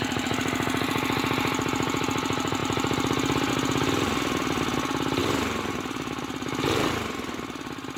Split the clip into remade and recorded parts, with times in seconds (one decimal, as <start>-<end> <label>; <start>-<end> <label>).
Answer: 0.0-5.2 recorded; 5.2-6.6 remade; 6.6-8.0 recorded